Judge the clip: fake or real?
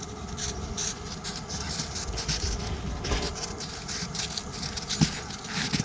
real